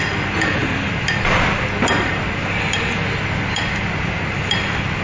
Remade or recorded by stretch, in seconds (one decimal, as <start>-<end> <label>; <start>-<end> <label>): 0.0-5.0 recorded